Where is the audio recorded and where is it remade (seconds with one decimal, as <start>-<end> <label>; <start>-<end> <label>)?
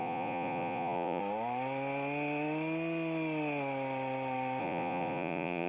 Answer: 0.0-1.2 remade; 1.2-4.6 recorded; 4.6-5.7 remade